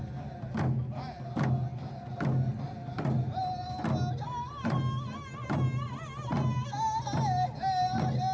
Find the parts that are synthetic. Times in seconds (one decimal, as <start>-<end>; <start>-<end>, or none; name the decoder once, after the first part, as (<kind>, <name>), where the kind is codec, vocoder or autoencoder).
none